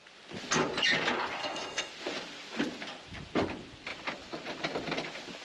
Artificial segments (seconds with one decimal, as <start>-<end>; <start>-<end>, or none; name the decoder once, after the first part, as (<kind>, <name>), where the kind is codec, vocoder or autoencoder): 1.4-1.9 (codec, SNAC)